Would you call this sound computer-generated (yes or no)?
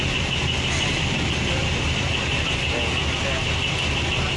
no